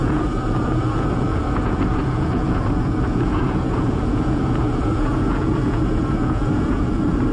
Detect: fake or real fake